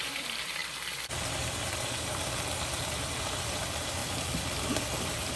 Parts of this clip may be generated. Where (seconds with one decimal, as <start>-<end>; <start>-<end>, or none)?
0.0-0.6; 3.2-4.0; 5.0-5.4